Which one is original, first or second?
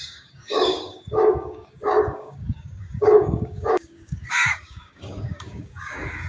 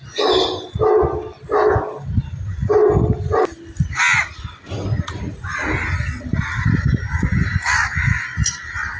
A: second